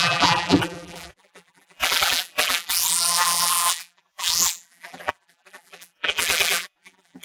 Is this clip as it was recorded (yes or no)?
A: no